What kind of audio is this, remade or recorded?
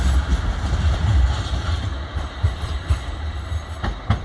recorded